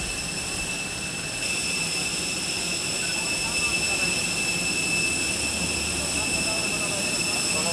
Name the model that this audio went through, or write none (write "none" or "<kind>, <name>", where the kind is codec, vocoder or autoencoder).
none